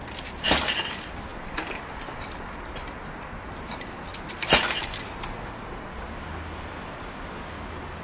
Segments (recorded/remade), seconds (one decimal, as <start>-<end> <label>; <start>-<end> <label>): 0.0-8.0 recorded